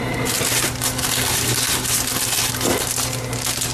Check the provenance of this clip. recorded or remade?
recorded